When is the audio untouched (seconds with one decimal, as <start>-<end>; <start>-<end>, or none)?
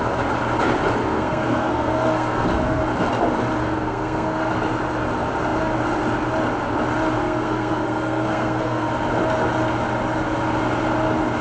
0.0-1.0; 2.8-3.6; 4.5-7.2; 8.9-11.4